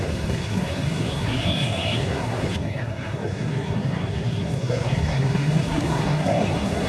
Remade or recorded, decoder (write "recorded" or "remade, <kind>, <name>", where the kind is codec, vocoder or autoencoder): remade, codec, SNAC